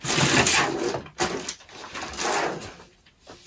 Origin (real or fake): real